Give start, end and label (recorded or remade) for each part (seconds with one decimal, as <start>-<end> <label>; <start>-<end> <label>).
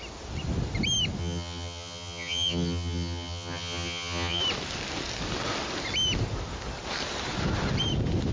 0.0-1.2 recorded; 1.2-4.4 remade; 4.4-8.3 recorded